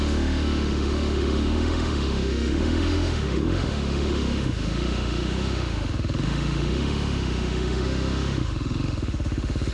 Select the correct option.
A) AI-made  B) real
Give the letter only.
A